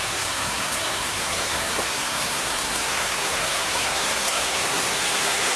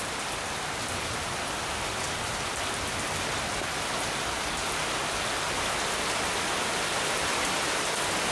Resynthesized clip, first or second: first